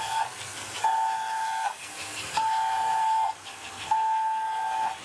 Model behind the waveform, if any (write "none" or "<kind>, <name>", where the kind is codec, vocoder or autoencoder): codec, SNAC